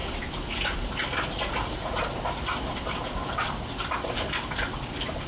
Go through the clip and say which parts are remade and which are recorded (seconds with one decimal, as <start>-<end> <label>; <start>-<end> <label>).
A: 0.0-5.3 recorded